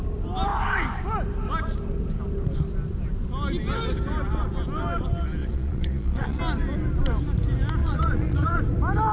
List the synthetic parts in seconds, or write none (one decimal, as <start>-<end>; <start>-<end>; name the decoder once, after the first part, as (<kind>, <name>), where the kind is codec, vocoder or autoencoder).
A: 5.4-6.4 (vocoder, Vocos); 7.8-8.6